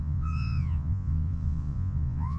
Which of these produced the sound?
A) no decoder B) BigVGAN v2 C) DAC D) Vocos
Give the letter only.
D